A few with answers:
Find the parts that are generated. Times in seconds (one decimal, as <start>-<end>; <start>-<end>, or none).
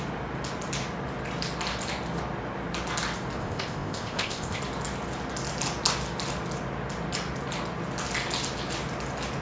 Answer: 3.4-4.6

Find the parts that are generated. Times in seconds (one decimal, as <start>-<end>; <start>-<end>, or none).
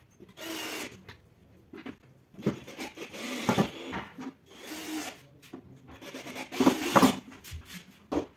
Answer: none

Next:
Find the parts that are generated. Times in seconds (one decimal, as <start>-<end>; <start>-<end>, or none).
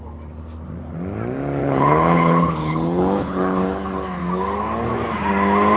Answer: 1.6-4.2